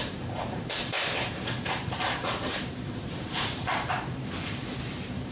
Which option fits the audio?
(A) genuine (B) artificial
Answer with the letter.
B